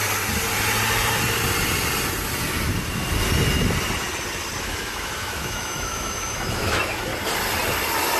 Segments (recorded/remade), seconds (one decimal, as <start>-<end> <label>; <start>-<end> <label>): 0.0-4.6 recorded; 4.6-7.1 remade; 7.1-8.2 recorded